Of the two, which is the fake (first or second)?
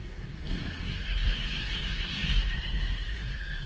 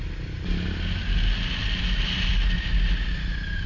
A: first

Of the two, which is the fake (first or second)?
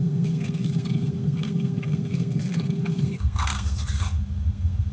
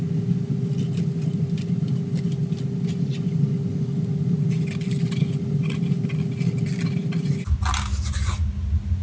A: first